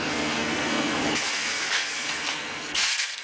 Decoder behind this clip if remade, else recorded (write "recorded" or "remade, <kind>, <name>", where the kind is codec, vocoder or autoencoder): remade, codec, SNAC